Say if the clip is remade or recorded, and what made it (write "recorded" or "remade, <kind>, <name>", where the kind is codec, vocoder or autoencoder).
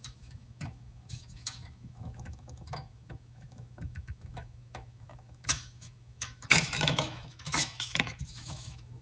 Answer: remade, autoencoder, DAC-VAE